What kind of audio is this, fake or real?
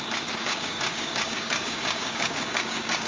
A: fake